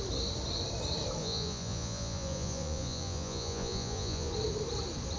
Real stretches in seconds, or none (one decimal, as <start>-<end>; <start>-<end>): 0.0-1.2; 4.3-5.2